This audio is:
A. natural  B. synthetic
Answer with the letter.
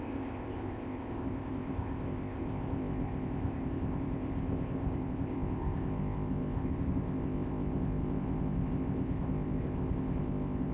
B